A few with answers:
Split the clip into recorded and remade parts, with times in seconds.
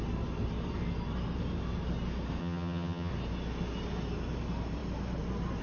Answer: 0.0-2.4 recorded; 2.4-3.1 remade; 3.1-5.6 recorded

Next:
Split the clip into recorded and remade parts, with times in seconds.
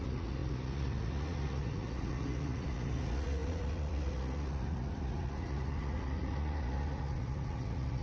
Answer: 0.0-8.0 remade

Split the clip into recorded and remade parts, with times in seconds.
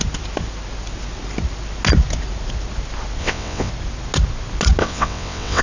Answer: 0.0-3.2 recorded; 3.2-3.7 remade; 3.7-4.8 recorded; 4.8-5.6 remade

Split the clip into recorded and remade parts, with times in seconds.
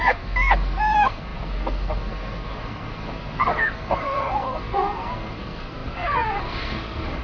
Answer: 0.0-7.2 remade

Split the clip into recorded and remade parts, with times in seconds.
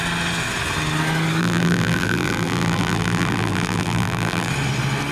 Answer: 0.0-1.4 recorded; 1.4-4.5 remade; 4.5-5.1 recorded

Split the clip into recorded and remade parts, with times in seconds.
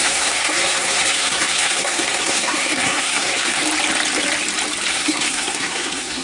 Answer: 0.0-3.6 remade; 3.6-4.9 recorded; 4.9-6.2 remade